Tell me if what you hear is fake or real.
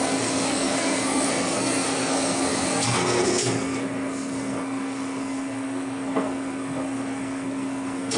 fake